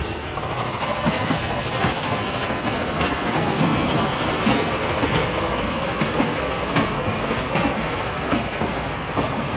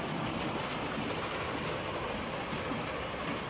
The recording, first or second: second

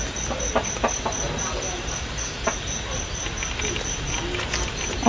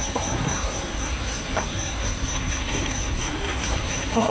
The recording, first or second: first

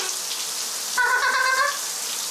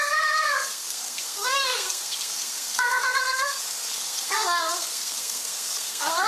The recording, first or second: first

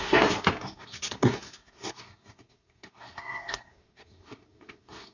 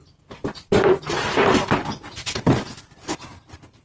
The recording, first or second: second